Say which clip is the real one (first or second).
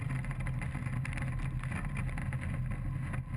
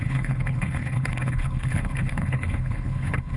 first